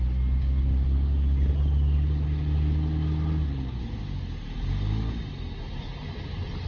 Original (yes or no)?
yes